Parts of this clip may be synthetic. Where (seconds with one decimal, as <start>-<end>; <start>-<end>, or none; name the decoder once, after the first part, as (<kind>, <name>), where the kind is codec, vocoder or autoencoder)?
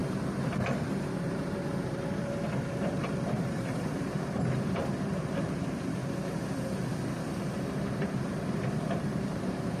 0.0-6.0 (vocoder, BigVGAN v2); 7.4-9.8